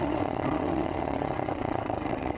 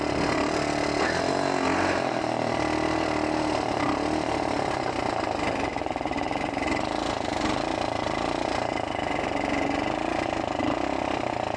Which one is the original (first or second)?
second